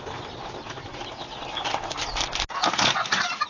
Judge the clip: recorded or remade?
recorded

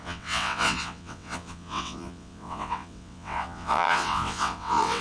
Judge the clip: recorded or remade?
remade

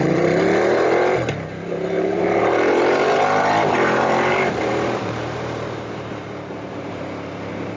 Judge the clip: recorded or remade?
remade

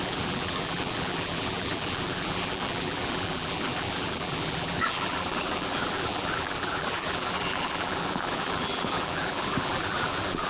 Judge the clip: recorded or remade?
remade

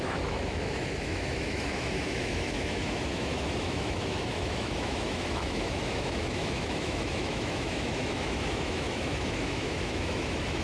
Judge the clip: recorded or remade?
remade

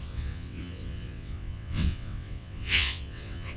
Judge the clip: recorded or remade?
remade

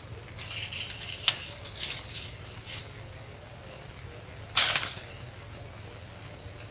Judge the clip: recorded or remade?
recorded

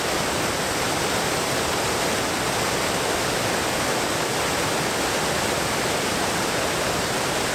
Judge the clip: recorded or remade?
recorded